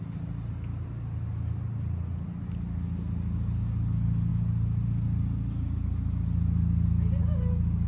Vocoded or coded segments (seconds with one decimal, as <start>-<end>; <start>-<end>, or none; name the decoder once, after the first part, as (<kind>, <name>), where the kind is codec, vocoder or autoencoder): none

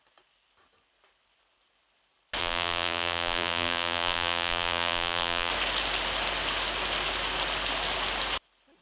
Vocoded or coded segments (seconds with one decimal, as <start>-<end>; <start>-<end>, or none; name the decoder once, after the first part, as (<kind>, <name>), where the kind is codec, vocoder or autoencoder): 2.4-5.5 (vocoder, BigVGAN v2)